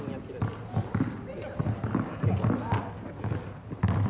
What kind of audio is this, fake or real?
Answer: real